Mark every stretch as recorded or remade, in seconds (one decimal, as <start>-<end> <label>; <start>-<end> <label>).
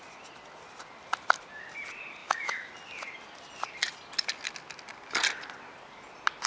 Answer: 0.0-2.2 recorded; 2.2-2.7 remade; 2.7-6.5 recorded